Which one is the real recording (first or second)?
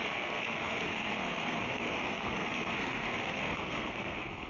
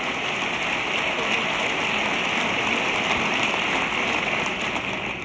second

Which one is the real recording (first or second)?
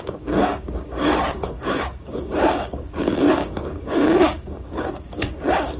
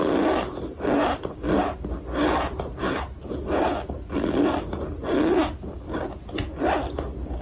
second